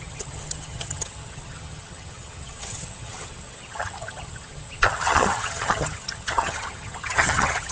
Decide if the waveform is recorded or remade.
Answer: remade